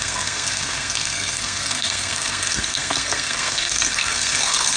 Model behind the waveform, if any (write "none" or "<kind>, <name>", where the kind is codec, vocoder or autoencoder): codec, SNAC